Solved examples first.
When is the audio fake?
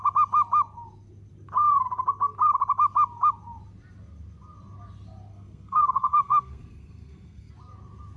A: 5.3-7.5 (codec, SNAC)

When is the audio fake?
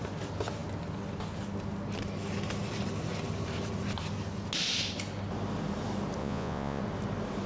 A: 6.2-6.8 (vocoder, Vocos)